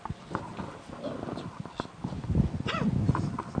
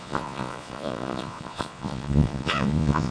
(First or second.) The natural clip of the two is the first